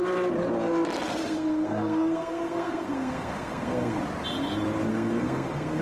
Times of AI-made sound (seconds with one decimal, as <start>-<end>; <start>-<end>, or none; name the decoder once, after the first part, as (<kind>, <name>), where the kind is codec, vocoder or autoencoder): 1.2-4.0 (codec, SNAC); 4.9-5.8